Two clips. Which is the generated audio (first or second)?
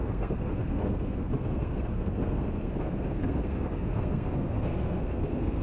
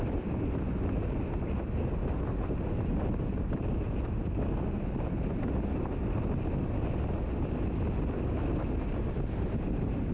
first